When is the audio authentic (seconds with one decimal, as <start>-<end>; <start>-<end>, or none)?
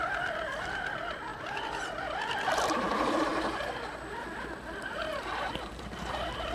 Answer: 3.3-5.8